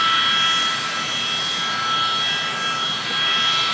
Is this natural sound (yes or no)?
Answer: yes